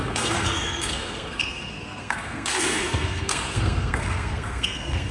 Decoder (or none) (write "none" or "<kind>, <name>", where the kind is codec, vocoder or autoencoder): codec, SNAC